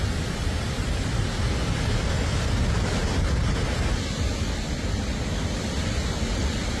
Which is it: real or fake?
real